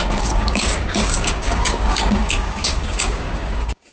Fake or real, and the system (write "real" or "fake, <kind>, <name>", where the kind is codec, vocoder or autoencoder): fake, codec, DAC